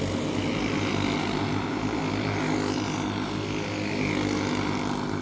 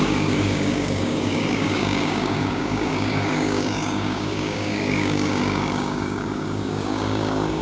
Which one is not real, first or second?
second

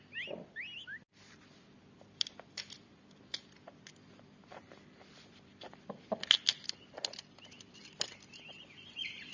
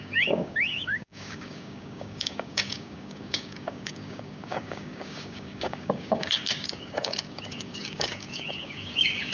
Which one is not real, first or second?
second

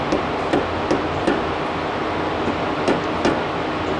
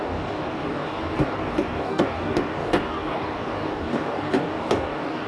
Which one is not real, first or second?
second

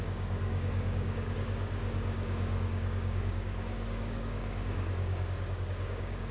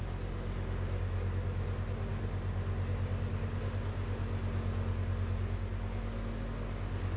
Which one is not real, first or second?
first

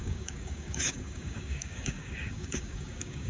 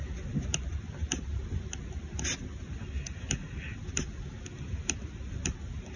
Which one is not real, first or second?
first